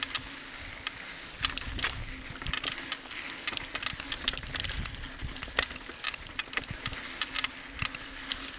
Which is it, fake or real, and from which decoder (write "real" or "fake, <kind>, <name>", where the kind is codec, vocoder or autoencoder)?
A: real